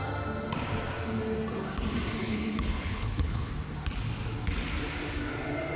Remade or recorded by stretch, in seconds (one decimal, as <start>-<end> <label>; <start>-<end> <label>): 0.0-2.2 recorded; 2.2-3.5 remade; 3.5-5.8 recorded